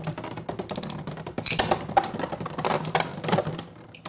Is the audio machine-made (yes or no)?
no